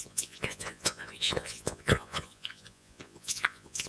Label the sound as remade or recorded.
remade